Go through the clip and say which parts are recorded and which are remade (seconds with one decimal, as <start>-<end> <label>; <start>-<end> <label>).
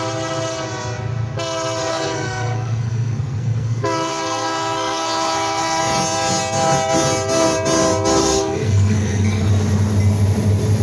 0.0-1.9 recorded; 1.9-5.8 remade; 5.8-8.2 recorded; 8.2-9.5 remade; 9.5-10.8 recorded